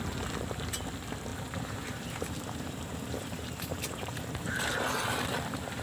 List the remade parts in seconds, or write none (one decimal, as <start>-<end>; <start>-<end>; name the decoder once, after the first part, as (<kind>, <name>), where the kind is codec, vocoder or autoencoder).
1.3-4.8 (vocoder, BigVGAN v2)